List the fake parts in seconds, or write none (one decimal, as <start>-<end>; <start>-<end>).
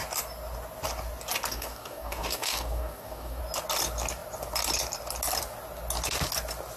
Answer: 1.5-3.4